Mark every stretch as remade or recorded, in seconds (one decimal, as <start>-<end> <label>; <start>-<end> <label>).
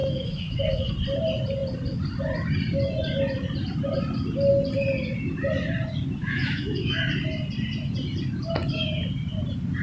0.0-0.9 remade; 0.9-6.2 recorded; 6.2-7.0 remade; 7.0-9.8 recorded